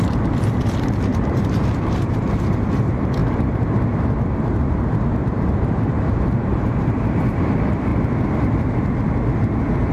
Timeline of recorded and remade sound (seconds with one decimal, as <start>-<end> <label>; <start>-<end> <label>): 0.0-1.1 recorded; 1.1-2.2 remade; 2.2-3.2 recorded; 3.2-3.8 remade; 3.8-5.2 recorded; 5.2-7.2 remade; 7.2-9.9 recorded